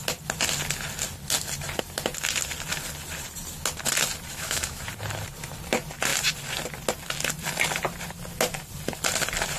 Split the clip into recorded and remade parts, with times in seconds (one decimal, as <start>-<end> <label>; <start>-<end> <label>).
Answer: 0.0-4.3 recorded; 4.3-4.8 remade; 4.8-9.6 recorded